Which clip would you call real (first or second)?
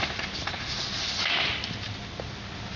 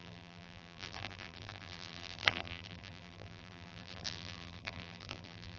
first